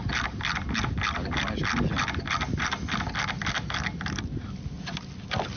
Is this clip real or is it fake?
real